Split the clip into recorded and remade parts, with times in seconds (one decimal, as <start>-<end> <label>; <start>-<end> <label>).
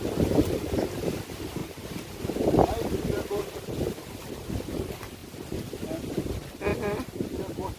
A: 0.0-1.6 recorded; 1.6-2.2 remade; 2.2-6.7 recorded; 6.7-7.8 remade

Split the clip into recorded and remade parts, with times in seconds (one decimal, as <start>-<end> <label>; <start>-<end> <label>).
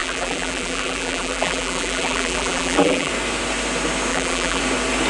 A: 0.0-3.1 remade; 3.1-4.1 recorded; 4.1-4.6 remade; 4.6-5.1 recorded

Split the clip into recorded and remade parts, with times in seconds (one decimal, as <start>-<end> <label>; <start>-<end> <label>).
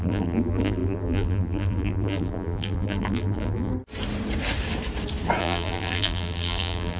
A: 0.0-3.7 remade; 3.7-5.4 recorded; 5.4-7.0 remade